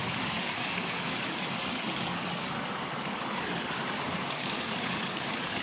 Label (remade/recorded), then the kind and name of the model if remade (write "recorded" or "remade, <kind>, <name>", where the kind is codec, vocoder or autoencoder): remade, codec, DAC